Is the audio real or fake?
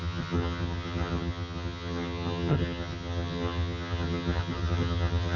fake